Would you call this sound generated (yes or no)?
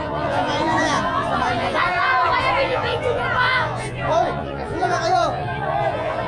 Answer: yes